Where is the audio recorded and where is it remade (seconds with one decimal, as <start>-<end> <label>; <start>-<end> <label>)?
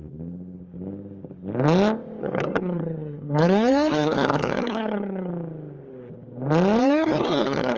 0.0-2.2 recorded; 2.2-5.3 remade; 5.3-6.8 recorded; 6.8-7.8 remade